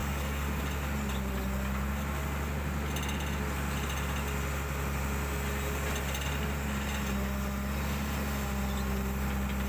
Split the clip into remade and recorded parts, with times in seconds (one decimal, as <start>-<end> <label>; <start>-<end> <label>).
0.0-0.6 remade; 0.6-9.7 recorded